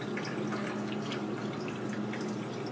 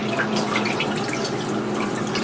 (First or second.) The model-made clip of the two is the second